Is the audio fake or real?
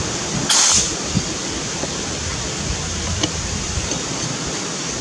real